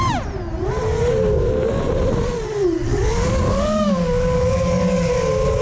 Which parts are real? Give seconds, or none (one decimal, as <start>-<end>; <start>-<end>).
0.0-2.9; 5.1-5.6